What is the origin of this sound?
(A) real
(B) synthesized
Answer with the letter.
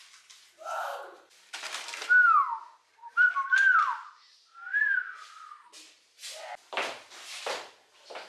A